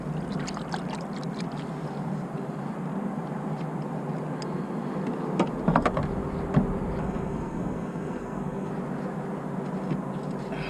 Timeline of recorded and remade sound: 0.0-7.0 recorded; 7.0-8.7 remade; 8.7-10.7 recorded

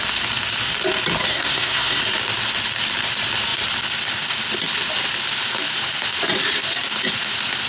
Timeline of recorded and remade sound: 0.0-1.3 recorded; 1.3-2.0 remade; 2.0-7.7 recorded